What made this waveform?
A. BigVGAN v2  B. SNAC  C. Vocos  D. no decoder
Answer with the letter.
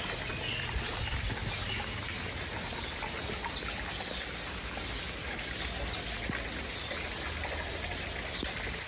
D